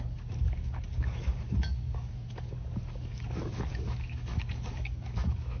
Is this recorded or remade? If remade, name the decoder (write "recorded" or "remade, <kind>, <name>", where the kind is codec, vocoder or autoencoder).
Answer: remade, codec, DAC